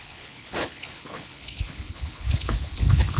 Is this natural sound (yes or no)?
no